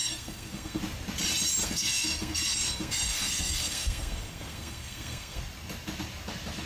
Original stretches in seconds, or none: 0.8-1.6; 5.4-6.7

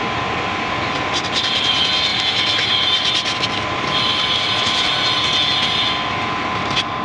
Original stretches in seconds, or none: 0.0-2.1; 4.9-7.0

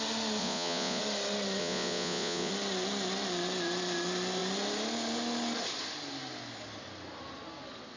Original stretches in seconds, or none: 0.0-0.4; 1.0-1.6; 2.5-8.0

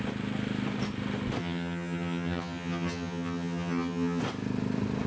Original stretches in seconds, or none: 0.0-1.4; 4.2-5.1

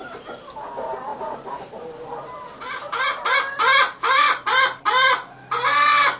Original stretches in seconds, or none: 0.0-6.2

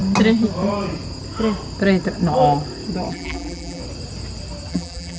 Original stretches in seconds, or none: 0.0-3.1; 3.8-4.7

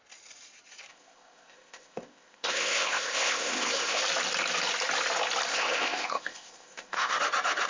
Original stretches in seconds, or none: 0.0-0.9; 4.0-5.5; 7.2-7.7

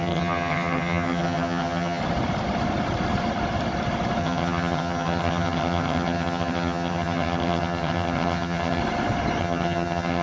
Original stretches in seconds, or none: 2.0-4.2; 8.8-9.4